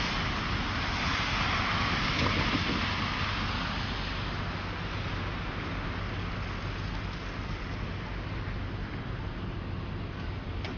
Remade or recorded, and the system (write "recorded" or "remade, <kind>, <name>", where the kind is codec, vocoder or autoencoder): recorded